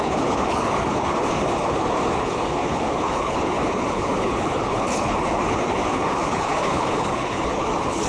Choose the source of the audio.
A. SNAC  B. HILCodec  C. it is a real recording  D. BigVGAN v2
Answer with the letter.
B